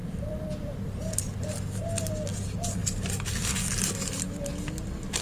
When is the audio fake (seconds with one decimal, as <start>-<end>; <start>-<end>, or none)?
0.0-0.9; 2.8-3.5